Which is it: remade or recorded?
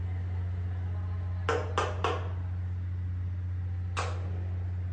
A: recorded